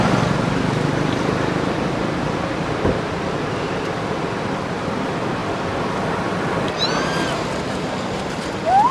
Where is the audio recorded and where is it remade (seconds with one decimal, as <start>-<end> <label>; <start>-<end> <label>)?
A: 0.0-8.9 recorded